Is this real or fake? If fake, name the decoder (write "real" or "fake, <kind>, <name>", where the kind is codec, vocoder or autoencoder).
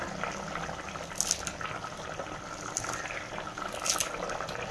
real